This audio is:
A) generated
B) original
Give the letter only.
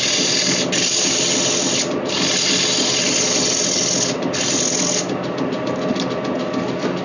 B